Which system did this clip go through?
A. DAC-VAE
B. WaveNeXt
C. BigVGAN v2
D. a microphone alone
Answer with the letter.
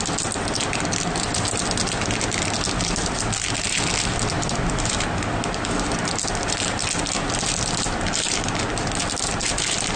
D